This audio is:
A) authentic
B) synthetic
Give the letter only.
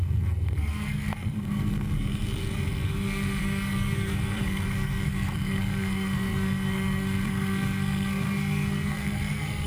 B